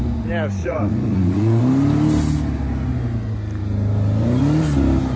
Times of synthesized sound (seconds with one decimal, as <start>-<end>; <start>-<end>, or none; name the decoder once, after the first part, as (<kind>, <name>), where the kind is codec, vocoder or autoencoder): 0.6-1.6 (vocoder, Vocos)